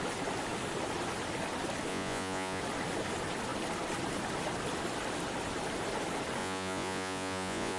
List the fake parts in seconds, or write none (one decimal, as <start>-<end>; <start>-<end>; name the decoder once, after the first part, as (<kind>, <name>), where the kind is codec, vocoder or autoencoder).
1.9-2.6 (vocoder, Vocos); 6.4-7.8